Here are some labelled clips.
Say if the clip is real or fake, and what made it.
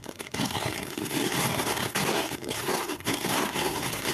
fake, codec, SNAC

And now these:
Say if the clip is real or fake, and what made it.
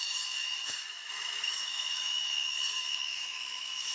fake, autoencoder, DAC-VAE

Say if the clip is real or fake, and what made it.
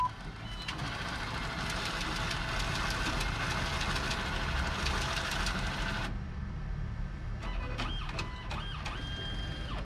real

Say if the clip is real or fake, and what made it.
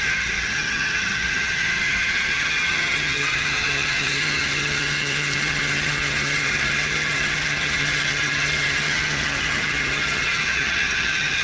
fake, vocoder, HiFi-GAN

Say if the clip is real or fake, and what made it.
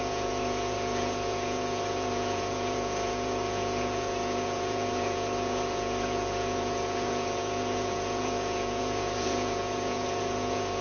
fake, vocoder, Vocos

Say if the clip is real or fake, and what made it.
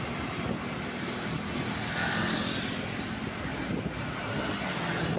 real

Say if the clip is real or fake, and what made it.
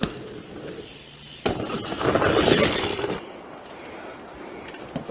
real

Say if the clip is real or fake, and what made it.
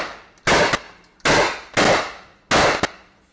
real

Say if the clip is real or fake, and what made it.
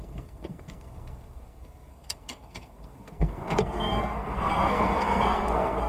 fake, codec, SNAC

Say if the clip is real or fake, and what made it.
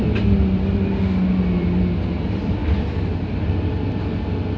real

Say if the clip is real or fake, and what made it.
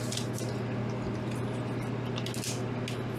real